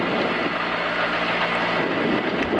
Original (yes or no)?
yes